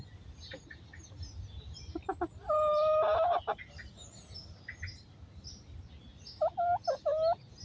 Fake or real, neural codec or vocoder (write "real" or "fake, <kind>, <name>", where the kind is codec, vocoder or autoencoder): real